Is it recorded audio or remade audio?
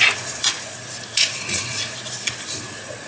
remade